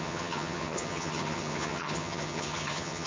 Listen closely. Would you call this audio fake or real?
fake